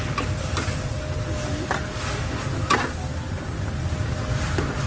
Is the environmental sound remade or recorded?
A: recorded